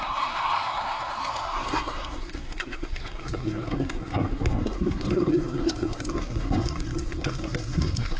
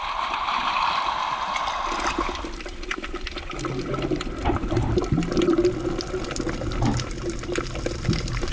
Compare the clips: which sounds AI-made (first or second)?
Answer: first